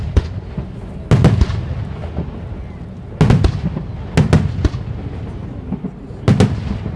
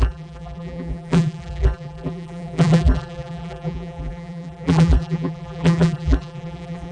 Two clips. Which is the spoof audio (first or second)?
second